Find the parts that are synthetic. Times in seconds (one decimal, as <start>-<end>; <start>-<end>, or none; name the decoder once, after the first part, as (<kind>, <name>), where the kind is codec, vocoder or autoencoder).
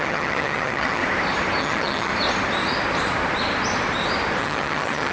0.0-1.0 (vocoder, HiFi-GAN); 1.6-2.1; 4.4-5.1